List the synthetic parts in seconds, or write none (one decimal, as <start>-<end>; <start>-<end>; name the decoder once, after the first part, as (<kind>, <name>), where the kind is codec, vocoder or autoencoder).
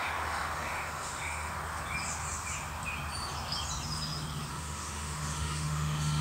0.0-1.5 (autoencoder, DAC-VAE); 4.5-6.2